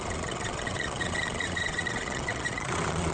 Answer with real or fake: fake